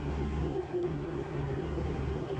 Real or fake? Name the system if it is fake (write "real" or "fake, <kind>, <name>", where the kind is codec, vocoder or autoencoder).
fake, codec, SNAC